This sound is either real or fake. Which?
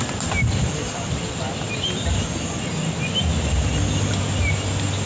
real